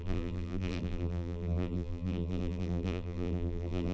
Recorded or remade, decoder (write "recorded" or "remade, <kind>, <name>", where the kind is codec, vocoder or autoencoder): remade, vocoder, BigVGAN v2